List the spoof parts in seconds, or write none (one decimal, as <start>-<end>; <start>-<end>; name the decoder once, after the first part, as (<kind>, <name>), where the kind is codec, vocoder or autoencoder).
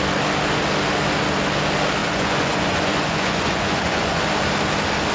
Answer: 2.0-4.2 (vocoder, Vocos)